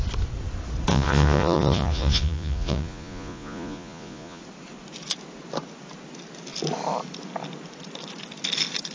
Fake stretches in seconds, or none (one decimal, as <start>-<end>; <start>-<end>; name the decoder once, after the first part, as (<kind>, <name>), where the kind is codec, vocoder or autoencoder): 0.9-4.4 (vocoder, Vocos)